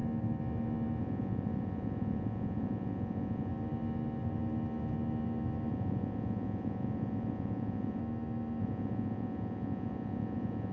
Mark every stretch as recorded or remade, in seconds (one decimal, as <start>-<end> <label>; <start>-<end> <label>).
0.0-1.0 recorded; 1.0-3.5 remade; 3.5-5.7 recorded; 5.7-8.0 remade; 8.0-8.6 recorded; 8.6-10.7 remade